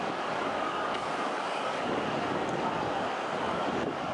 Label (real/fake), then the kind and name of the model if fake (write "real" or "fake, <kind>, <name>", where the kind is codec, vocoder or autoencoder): fake, codec, DAC